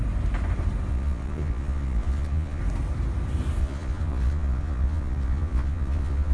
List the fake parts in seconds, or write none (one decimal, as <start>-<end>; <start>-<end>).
0.9-2.6; 3.6-6.3